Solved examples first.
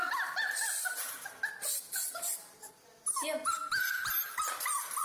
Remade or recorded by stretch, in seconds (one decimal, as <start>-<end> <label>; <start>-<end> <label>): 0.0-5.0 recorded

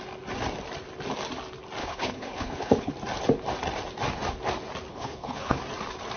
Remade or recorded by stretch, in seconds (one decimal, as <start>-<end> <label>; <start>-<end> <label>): 0.0-1.8 recorded; 1.8-2.9 remade; 2.9-4.9 recorded; 4.9-5.6 remade; 5.6-6.2 recorded

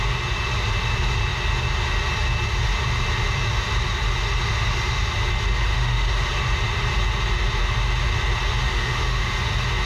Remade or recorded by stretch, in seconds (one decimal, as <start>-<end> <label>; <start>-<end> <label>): 0.0-5.7 recorded; 5.7-6.3 remade; 6.3-8.7 recorded; 8.7-9.3 remade; 9.3-9.9 recorded

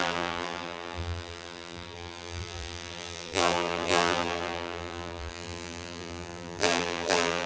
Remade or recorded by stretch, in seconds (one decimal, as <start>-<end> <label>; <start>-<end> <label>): 0.0-7.5 remade

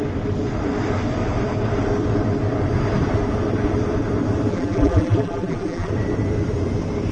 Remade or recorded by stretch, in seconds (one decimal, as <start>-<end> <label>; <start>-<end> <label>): 0.0-4.5 recorded; 4.5-5.9 remade; 5.9-7.1 recorded